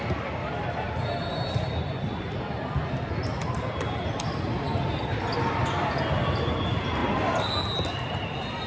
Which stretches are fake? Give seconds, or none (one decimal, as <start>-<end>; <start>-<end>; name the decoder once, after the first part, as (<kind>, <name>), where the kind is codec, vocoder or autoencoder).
none